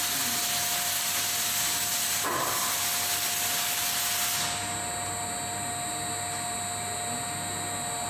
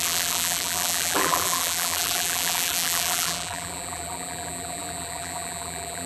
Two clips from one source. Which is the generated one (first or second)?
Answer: second